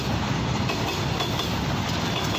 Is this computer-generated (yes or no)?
yes